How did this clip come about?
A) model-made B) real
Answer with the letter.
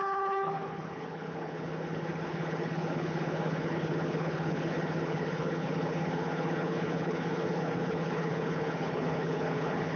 A